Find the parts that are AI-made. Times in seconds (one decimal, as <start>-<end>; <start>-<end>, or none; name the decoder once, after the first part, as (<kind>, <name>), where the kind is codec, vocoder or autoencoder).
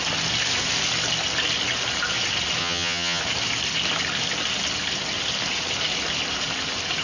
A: 2.6-3.2 (vocoder, HiFi-GAN)